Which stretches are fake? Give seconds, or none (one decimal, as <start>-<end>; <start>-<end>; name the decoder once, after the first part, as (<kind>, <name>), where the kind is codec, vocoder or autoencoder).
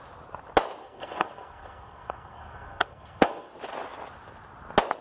0.8-3.5 (codec, SNAC)